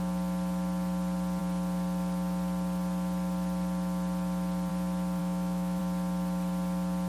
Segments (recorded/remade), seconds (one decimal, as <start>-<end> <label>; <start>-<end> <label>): 0.0-5.2 recorded; 5.2-5.8 remade; 5.8-7.1 recorded